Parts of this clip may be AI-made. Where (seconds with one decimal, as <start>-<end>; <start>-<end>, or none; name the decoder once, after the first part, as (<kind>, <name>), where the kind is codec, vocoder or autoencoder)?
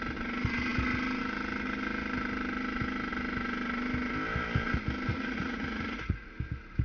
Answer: 5.1-6.3 (vocoder, Vocos)